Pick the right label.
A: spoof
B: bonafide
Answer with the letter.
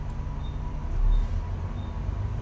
B